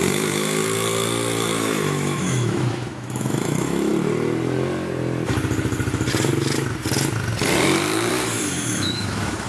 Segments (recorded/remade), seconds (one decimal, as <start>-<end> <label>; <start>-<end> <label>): 0.0-0.6 remade; 0.6-1.6 recorded; 1.6-3.9 remade; 3.9-8.1 recorded; 8.1-9.5 remade